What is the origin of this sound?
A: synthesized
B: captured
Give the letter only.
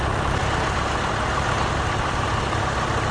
B